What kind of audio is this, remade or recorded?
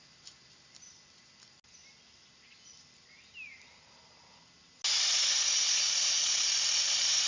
recorded